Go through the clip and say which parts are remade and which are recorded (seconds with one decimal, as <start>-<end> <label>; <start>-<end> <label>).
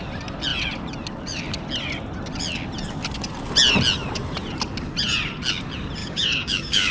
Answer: 0.0-6.0 recorded; 6.0-6.9 remade